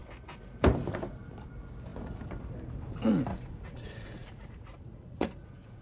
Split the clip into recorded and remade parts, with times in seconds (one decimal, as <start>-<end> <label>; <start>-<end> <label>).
0.0-3.3 recorded; 3.3-5.8 remade